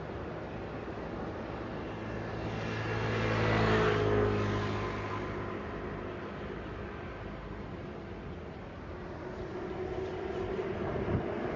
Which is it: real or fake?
real